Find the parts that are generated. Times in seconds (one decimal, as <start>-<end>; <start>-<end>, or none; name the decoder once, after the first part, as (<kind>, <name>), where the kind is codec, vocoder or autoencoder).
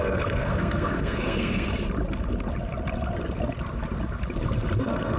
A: 0.0-1.7 (codec, SNAC); 4.8-5.2